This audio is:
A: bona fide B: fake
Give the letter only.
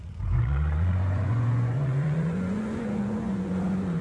B